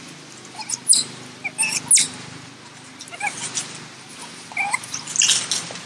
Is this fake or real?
real